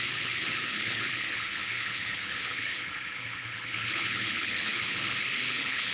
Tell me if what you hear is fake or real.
fake